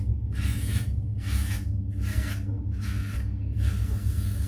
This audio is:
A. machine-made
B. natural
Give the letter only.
A